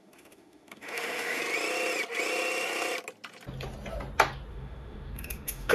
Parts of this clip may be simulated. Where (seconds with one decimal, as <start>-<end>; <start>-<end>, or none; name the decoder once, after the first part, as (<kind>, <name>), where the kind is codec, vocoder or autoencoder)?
0.0-1.4 (autoencoder, DAC-VAE); 4.5-5.7